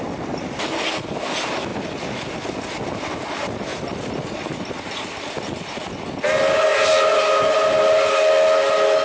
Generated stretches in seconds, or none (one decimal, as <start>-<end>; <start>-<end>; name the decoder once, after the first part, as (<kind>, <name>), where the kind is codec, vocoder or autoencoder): 1.7-3.1 (vocoder, BigVGAN v2); 3.7-5.7